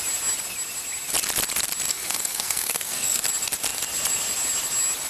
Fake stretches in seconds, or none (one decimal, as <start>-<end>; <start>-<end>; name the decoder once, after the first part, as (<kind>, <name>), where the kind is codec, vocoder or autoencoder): 1.9-3.3 (codec, SNAC)